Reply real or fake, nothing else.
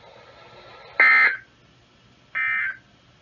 real